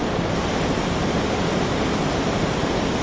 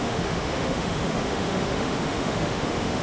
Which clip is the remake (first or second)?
second